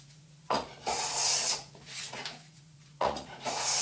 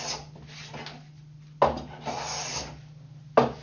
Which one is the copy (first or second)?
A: first